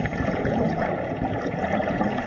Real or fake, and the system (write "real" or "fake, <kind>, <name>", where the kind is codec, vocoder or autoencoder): fake, vocoder, Vocos